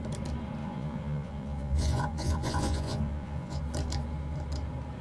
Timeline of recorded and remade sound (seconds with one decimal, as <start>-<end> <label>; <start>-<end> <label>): 0.0-0.6 recorded; 0.6-3.6 remade; 3.6-5.0 recorded